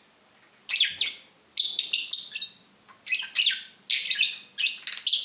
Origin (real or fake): real